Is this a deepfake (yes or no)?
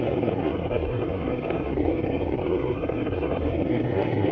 yes